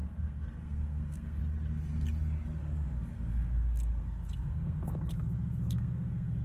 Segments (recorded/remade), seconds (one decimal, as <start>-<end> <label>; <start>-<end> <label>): 0.0-1.4 remade; 1.4-2.6 recorded; 2.6-6.4 remade